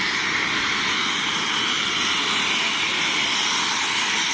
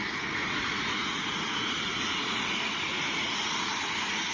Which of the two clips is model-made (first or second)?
second